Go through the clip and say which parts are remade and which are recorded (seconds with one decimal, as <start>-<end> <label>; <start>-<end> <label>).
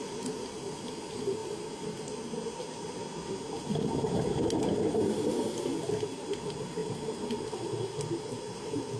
0.0-9.0 recorded